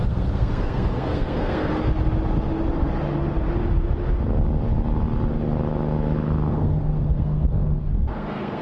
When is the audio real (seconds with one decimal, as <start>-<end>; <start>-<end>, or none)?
1.7-6.5